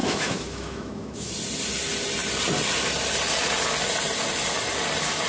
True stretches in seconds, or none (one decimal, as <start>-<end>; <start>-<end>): 1.3-5.3